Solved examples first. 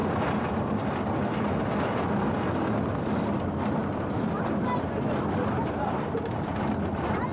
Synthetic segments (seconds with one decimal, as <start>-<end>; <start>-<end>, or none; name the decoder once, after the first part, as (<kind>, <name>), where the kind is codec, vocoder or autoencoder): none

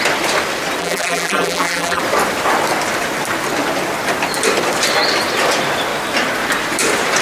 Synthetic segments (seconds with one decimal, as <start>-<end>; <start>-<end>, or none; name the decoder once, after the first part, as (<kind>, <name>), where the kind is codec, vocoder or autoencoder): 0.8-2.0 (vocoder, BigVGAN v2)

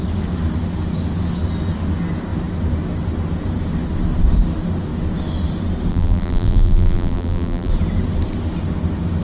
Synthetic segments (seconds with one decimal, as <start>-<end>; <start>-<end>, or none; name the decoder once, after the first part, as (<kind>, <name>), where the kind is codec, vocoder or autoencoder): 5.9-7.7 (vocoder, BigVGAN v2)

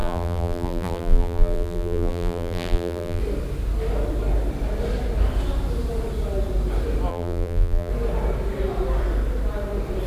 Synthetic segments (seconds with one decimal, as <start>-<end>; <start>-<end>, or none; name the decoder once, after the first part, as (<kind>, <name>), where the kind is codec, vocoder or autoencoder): 0.0-3.2 (vocoder, BigVGAN v2); 7.1-7.9

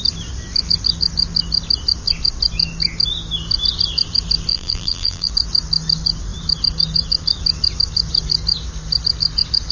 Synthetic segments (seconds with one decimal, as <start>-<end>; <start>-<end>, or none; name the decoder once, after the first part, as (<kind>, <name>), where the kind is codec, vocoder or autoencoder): 4.5-5.3 (vocoder, BigVGAN v2)

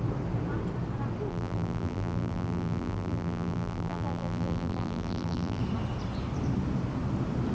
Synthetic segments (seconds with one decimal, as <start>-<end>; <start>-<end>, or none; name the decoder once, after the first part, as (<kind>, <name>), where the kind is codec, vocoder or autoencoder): 1.3-5.6 (vocoder, BigVGAN v2)

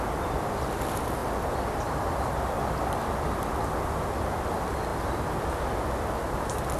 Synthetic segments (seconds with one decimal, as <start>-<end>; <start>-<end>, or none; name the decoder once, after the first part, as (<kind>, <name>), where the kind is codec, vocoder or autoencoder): 1.2-3.5 (vocoder, BigVGAN v2)

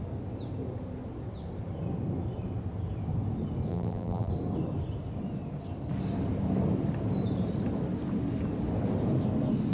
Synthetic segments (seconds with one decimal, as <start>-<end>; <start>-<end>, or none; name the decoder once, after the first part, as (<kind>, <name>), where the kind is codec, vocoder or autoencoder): 3.7-4.3 (vocoder, BigVGAN v2)